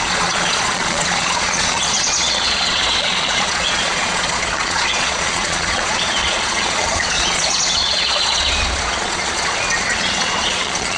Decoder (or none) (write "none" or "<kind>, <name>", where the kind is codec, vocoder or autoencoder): vocoder, Vocos